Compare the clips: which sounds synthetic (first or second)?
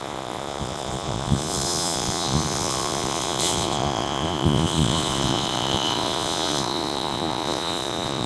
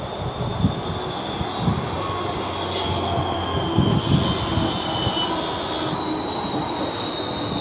first